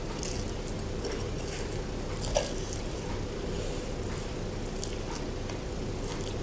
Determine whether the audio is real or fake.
real